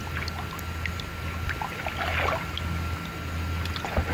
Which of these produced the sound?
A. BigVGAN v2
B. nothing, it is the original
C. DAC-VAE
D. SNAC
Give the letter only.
B